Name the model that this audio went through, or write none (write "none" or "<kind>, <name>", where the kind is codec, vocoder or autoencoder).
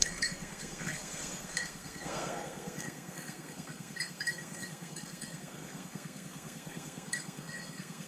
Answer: codec, SNAC